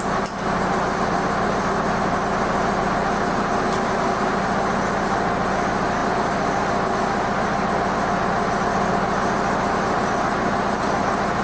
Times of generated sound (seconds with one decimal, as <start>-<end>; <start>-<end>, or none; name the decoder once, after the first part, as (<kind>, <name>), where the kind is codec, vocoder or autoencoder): none